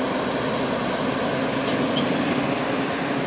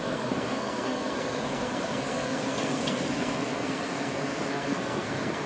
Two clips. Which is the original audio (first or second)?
first